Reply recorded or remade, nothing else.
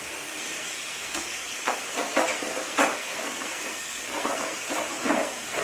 remade